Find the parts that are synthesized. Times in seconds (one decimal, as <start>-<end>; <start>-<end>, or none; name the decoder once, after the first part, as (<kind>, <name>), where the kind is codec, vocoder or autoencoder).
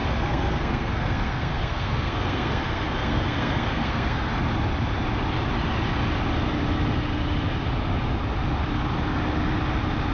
0.0-4.3 (codec, SNAC)